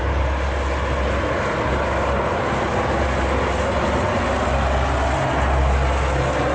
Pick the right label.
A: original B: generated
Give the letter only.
A